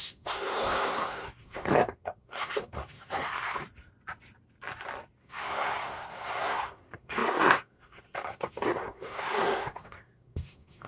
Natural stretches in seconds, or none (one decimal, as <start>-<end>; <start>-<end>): 3.6-5.2